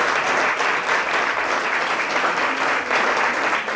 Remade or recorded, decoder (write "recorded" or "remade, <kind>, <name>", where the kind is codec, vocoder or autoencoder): recorded